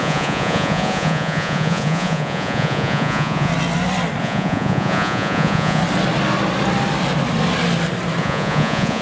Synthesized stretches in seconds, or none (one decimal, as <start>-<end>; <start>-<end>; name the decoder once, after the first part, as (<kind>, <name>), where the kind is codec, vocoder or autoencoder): 0.0-3.5 (vocoder, Vocos); 4.2-5.8; 8.2-9.0

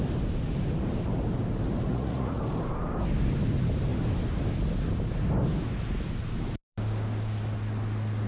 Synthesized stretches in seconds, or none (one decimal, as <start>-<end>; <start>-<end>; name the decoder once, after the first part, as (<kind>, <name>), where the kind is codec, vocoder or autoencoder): 1.9-2.4 (vocoder, Vocos)